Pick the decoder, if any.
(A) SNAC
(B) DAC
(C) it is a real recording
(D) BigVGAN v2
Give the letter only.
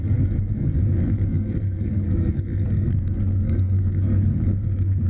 A